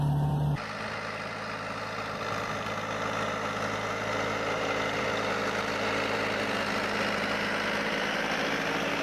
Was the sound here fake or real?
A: real